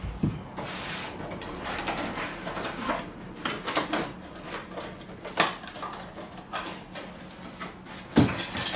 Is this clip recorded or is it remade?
recorded